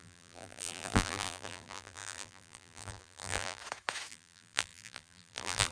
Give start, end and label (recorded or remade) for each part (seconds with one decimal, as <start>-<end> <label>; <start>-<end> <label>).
0.0-3.6 remade; 3.6-4.1 recorded; 4.1-5.7 remade

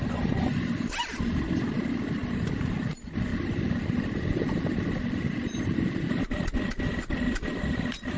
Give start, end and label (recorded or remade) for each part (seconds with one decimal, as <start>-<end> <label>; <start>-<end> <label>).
0.0-2.2 recorded; 2.2-2.9 remade; 2.9-3.3 recorded; 3.3-6.2 remade; 6.2-8.2 recorded

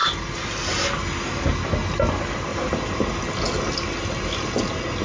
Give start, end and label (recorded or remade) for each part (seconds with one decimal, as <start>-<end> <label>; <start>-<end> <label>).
0.0-0.7 remade; 0.7-2.5 recorded; 2.5-4.6 remade; 4.6-5.0 recorded

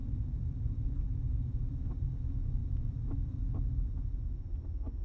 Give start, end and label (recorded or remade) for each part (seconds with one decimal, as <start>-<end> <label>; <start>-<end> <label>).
0.0-1.7 remade; 1.7-5.0 recorded

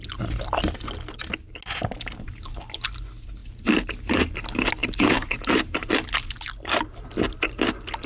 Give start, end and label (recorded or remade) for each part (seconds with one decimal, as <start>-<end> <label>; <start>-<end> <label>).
0.0-3.4 recorded; 3.4-3.9 remade; 3.9-4.8 recorded; 4.8-5.9 remade; 5.9-8.1 recorded

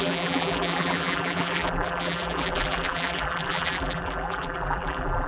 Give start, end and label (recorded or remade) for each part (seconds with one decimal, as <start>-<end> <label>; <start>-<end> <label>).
0.0-5.3 remade